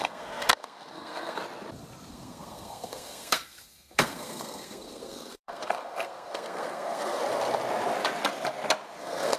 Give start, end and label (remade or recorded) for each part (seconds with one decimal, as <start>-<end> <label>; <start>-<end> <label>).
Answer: 0.0-1.4 remade; 1.4-2.1 recorded; 2.1-7.2 remade; 7.2-9.0 recorded; 9.0-9.4 remade

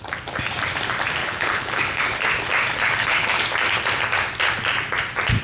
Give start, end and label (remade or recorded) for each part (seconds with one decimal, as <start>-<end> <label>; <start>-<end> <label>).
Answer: 0.0-1.2 recorded; 1.2-2.0 remade; 2.0-2.7 recorded; 2.7-3.4 remade; 3.4-5.4 recorded

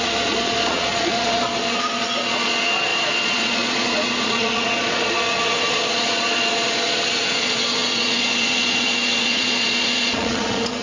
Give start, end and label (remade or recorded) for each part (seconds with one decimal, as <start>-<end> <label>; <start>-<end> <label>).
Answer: 0.0-10.8 remade

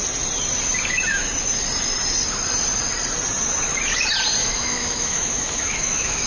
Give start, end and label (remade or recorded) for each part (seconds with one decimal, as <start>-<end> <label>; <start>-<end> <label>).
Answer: 0.0-4.4 recorded; 4.4-6.3 remade

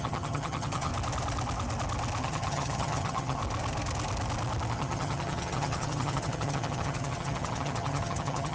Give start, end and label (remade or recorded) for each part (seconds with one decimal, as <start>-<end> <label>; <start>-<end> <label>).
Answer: 0.0-0.9 remade; 0.9-2.2 recorded; 2.2-3.4 remade; 3.4-4.7 recorded; 4.7-8.5 remade

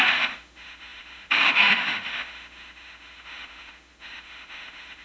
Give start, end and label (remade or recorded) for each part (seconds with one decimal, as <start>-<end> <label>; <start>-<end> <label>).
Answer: 0.0-5.0 remade

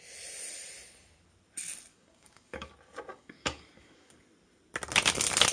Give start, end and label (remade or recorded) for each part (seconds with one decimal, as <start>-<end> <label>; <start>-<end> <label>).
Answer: 0.0-1.9 recorded; 1.9-2.7 remade; 2.7-3.1 recorded; 3.1-4.1 remade; 4.1-5.5 recorded